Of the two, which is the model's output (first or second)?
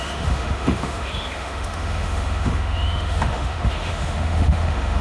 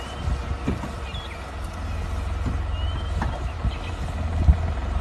first